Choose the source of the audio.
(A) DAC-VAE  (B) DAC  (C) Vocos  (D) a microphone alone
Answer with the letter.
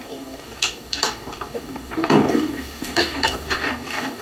B